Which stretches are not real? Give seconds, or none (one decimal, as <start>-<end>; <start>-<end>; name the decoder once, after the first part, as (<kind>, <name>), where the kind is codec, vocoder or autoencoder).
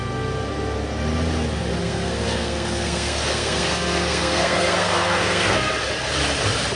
1.8-5.7 (codec, SNAC)